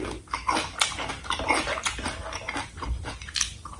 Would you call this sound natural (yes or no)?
yes